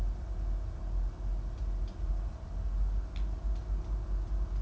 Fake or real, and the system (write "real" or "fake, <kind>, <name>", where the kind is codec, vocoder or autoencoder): real